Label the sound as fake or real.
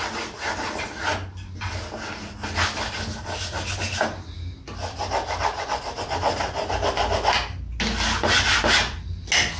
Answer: real